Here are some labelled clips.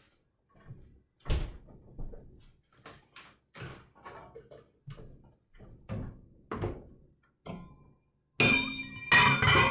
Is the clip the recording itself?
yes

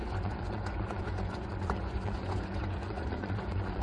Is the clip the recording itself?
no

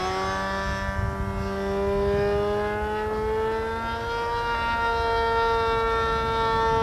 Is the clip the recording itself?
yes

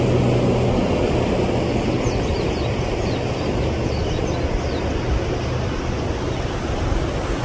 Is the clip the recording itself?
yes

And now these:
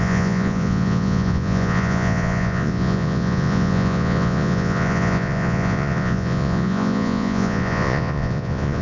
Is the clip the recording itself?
no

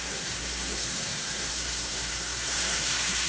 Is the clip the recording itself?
no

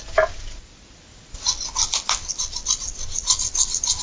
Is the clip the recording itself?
yes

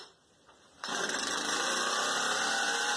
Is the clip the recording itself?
no